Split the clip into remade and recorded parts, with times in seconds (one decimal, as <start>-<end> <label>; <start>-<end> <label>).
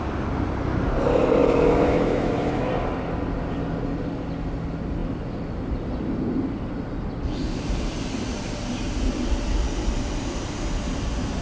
0.0-1.4 recorded; 1.4-2.7 remade; 2.7-11.4 recorded